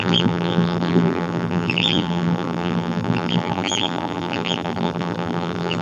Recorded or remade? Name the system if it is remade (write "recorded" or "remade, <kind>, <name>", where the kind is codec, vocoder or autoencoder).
remade, vocoder, BigVGAN v2